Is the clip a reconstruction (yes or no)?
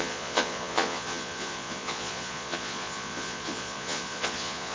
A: yes